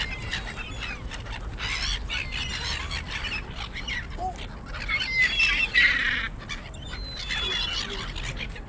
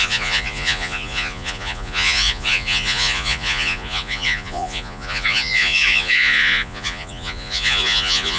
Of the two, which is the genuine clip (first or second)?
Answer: first